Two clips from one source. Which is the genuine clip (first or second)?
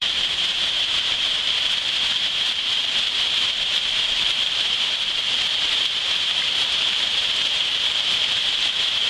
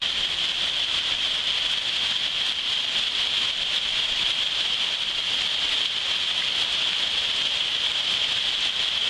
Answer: second